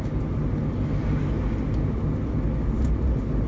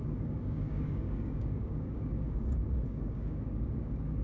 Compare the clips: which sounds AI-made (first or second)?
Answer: second